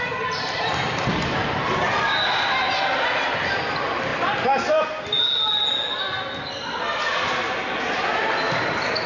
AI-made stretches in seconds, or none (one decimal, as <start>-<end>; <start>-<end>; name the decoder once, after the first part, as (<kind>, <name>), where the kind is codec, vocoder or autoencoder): none